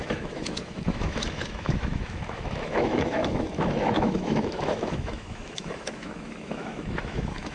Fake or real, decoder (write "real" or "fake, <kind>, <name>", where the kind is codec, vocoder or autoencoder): fake, autoencoder, DAC-VAE